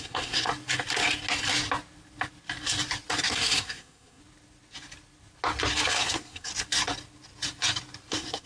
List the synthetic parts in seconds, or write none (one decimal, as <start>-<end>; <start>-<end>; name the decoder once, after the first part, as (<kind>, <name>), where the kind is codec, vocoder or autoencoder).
0.0-0.5 (codec, SNAC); 3.3-4.2; 5.9-6.5; 8.1-8.5